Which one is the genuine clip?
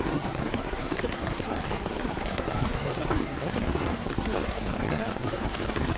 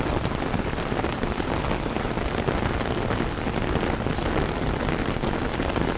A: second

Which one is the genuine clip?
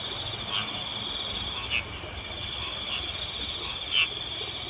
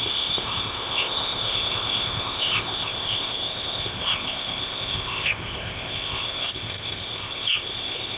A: first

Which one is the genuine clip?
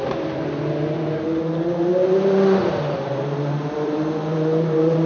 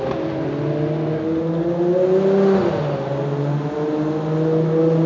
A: second